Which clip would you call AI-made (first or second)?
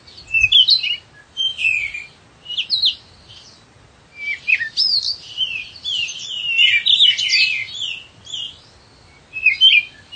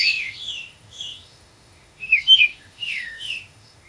second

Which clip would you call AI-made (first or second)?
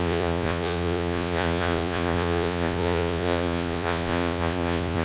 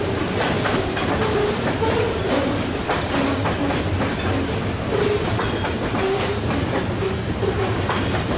first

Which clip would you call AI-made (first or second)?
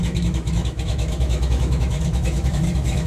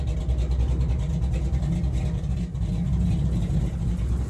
first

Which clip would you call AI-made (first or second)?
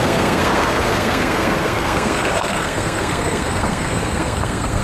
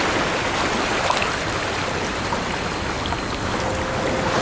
first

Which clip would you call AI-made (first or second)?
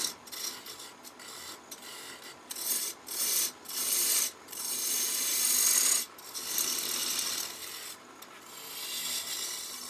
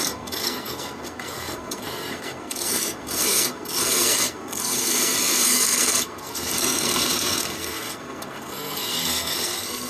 second